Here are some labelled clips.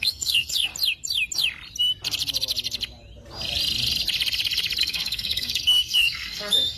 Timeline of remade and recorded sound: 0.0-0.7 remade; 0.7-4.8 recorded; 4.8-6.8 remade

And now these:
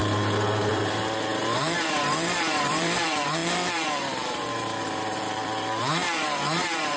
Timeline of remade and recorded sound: 0.0-0.7 recorded; 0.7-7.0 remade

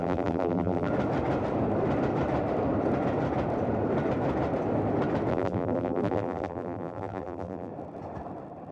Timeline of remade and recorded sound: 0.0-0.9 remade; 0.9-5.3 recorded; 5.3-7.7 remade; 7.7-8.7 recorded

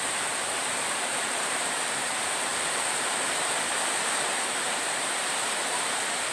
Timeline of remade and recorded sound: 0.0-6.3 remade

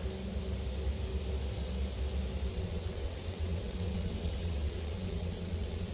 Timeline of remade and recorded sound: 0.0-2.5 recorded; 2.5-5.9 remade

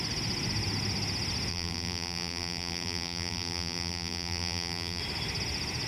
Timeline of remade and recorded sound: 0.0-1.5 recorded; 1.5-5.0 remade; 5.0-5.9 recorded

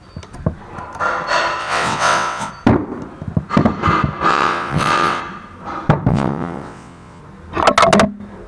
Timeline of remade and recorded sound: 0.0-1.6 recorded; 1.6-2.5 remade; 2.5-4.3 recorded; 4.3-5.2 remade; 5.2-6.1 recorded; 6.1-7.2 remade; 7.2-8.5 recorded

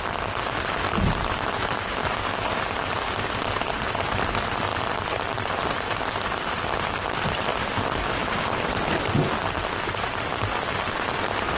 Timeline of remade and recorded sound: 0.0-1.9 remade; 1.9-3.4 recorded; 3.4-7.5 remade; 7.5-10.9 recorded; 10.9-11.6 remade